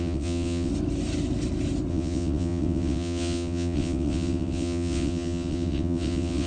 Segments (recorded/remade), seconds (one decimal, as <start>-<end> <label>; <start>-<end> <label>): 0.0-0.7 remade; 0.7-1.9 recorded; 1.9-6.5 remade